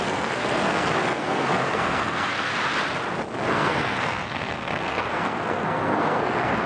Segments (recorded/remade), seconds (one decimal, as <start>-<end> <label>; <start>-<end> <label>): 0.0-2.5 remade; 2.5-3.5 recorded; 3.5-6.7 remade